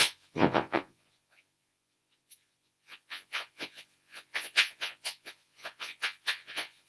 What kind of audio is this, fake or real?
fake